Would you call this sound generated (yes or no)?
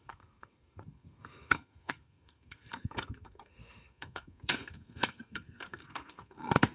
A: yes